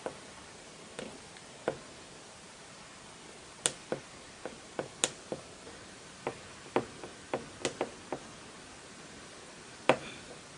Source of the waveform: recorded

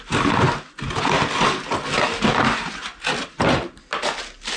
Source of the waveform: recorded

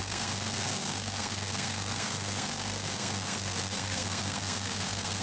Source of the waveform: remade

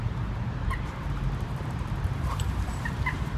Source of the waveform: remade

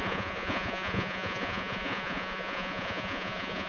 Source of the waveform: remade